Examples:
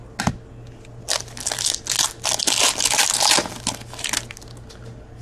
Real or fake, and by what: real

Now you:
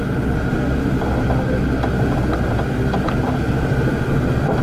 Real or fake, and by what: real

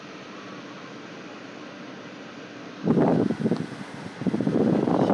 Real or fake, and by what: real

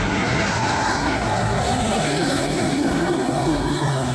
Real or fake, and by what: fake, codec, SNAC